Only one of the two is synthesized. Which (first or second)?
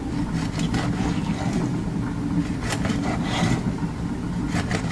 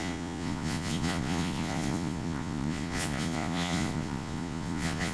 second